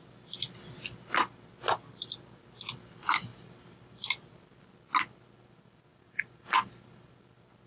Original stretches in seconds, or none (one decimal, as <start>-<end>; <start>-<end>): 0.0-3.3; 4.2-5.9; 7.1-7.7

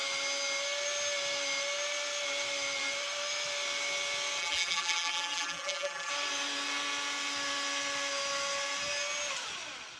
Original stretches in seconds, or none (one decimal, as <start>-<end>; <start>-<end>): 0.0-4.4; 6.1-10.0